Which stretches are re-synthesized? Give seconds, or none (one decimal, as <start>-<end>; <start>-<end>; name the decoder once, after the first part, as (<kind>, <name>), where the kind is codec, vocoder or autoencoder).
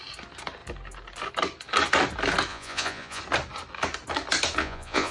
2.5-3.2 (vocoder, Vocos); 4.6-5.1